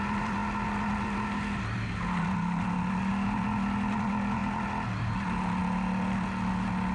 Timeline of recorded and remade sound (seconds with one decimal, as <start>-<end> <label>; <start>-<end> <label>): 0.0-6.9 recorded